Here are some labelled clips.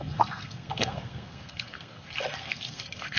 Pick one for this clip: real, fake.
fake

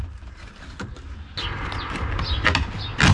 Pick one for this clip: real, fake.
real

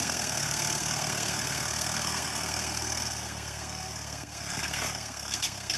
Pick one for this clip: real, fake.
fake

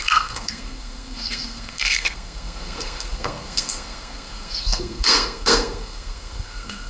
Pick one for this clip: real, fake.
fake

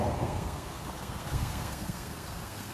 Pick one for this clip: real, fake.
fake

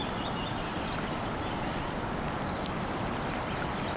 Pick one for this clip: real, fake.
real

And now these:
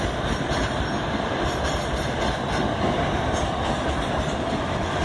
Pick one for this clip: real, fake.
real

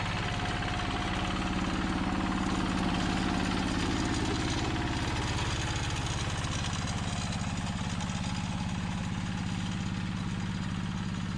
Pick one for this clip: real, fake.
real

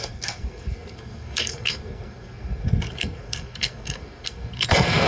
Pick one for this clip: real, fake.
fake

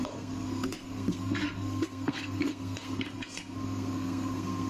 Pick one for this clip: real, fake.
fake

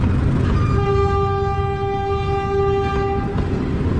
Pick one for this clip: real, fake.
real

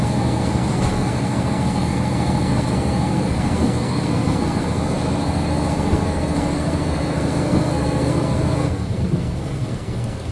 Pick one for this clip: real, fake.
fake